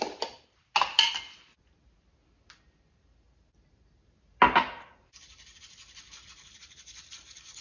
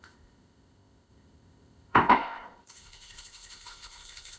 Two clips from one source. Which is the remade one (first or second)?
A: second